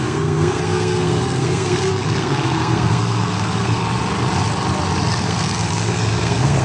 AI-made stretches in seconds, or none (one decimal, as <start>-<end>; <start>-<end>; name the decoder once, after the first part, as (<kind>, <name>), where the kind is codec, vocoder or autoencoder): 0.0-3.8 (codec, SNAC); 5.2-6.6